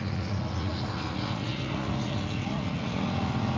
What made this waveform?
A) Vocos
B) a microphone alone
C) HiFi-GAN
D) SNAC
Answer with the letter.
A